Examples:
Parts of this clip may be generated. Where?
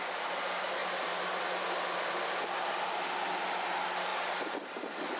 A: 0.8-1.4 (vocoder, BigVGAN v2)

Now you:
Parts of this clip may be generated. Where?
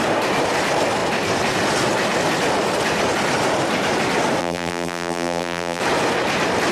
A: 4.4-5.8 (vocoder, BigVGAN v2)